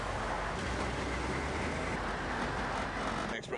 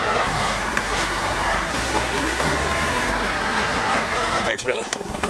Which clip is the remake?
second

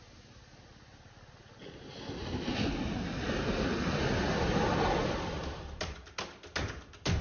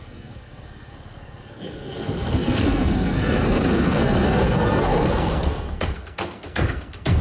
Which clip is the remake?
second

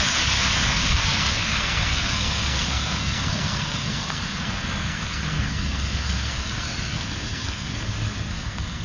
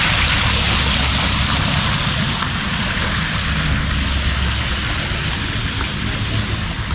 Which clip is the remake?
first